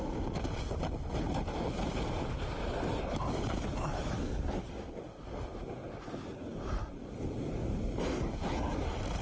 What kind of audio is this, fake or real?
real